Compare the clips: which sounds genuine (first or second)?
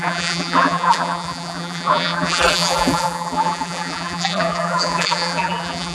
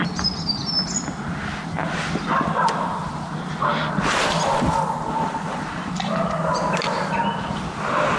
second